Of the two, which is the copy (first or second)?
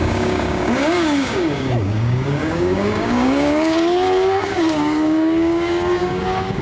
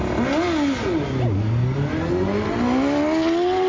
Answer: first